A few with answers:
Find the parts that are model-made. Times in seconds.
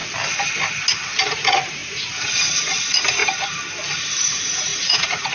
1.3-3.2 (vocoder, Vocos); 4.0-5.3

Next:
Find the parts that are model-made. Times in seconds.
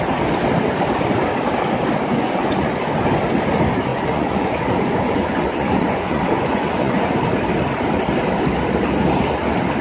2.1-2.7 (vocoder, Vocos); 3.9-7.1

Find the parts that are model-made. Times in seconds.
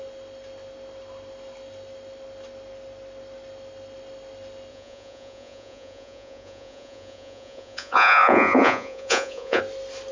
4.7-9.6 (vocoder, Vocos)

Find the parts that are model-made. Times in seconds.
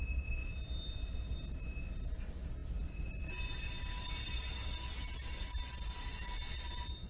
none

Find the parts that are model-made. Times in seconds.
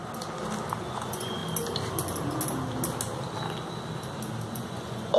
0.8-1.4 (vocoder, Vocos); 4.5-5.2